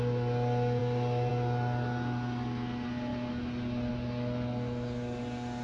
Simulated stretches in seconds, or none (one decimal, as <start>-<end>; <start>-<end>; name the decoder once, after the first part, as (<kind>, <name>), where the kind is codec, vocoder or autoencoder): none